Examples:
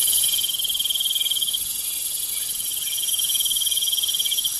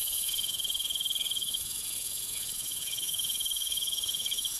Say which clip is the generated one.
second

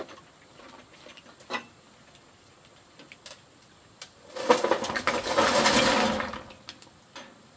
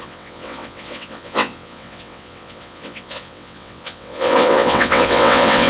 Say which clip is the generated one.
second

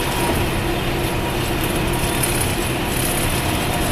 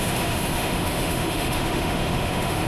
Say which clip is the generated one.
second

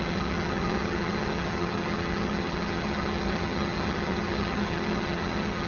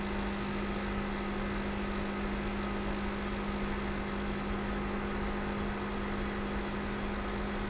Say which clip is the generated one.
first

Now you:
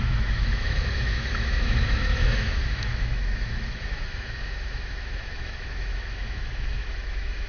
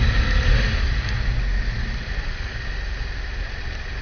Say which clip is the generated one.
first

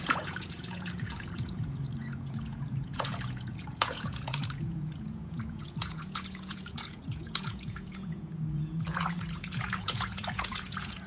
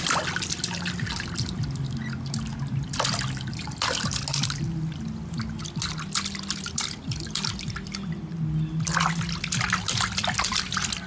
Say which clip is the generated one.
first